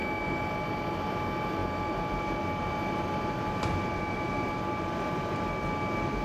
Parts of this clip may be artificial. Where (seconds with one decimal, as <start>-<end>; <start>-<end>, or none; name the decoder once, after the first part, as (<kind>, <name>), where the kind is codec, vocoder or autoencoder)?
none